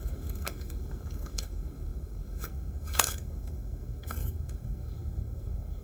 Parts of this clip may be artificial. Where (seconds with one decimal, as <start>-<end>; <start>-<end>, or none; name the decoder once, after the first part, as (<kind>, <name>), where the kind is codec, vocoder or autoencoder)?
0.0-5.8 (codec, SNAC)